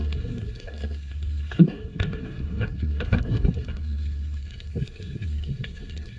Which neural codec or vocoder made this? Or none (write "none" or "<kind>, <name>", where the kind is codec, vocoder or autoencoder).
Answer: codec, SNAC